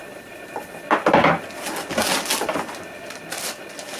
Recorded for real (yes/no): yes